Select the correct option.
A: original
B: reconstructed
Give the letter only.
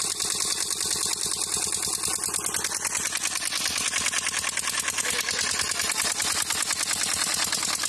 A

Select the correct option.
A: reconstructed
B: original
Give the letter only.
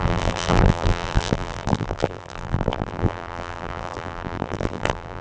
A